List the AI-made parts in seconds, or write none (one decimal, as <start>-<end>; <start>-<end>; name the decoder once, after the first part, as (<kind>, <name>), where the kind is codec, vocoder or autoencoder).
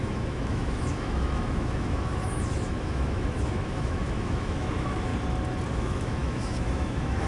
0.0-5.1 (autoencoder, DAC-VAE); 5.7-7.3